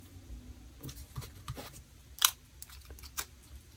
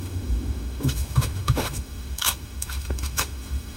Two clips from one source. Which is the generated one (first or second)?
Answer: second